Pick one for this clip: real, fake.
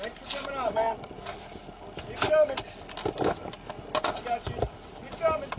real